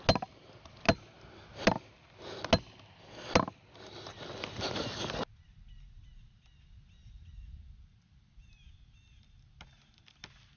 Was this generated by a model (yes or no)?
no